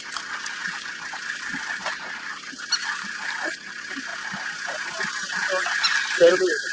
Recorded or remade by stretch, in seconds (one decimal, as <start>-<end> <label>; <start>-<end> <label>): 0.0-6.7 recorded